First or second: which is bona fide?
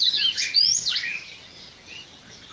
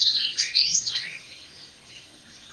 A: first